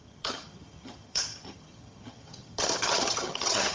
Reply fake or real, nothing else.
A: fake